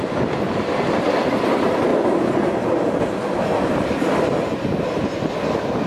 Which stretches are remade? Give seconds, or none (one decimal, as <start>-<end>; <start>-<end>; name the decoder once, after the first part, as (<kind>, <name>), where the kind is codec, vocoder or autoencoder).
none